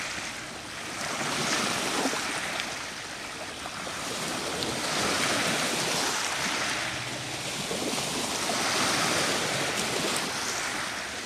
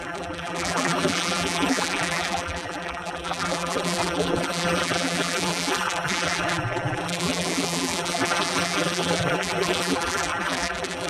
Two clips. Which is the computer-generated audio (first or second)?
second